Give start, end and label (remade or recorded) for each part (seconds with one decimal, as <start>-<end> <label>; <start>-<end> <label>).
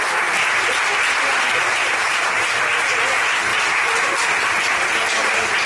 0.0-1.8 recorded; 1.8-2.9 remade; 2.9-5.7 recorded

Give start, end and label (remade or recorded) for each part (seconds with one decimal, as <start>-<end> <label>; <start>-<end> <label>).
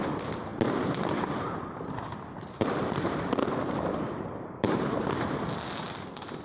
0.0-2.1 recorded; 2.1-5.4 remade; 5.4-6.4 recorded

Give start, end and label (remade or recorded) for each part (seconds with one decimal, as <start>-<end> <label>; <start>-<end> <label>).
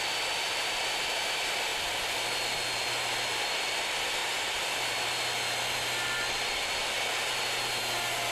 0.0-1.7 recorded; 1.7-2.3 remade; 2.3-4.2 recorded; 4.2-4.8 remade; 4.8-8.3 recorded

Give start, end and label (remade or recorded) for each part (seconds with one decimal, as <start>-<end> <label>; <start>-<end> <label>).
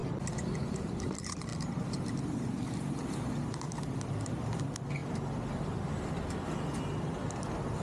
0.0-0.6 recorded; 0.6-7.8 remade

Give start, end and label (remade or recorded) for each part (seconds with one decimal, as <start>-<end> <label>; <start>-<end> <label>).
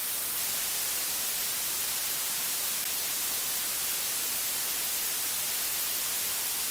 0.0-6.7 recorded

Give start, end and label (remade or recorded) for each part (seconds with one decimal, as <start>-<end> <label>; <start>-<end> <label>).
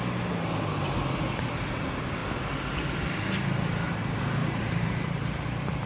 0.0-4.4 recorded; 4.4-5.9 remade